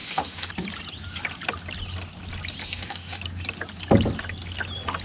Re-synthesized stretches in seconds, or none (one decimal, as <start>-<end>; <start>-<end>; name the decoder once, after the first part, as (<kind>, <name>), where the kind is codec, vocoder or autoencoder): 0.0-0.5 (autoencoder, DAC-VAE); 2.6-3.2